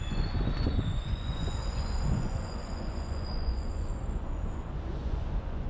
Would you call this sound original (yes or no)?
no